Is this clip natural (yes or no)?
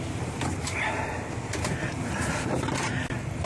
yes